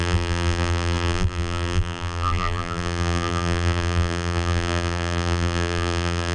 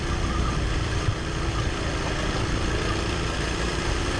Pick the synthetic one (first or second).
first